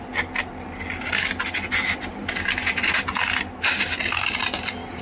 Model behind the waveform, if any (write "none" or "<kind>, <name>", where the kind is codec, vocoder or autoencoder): none